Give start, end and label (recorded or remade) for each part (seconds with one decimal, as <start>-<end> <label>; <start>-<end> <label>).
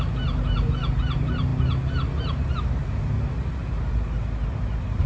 0.0-5.1 recorded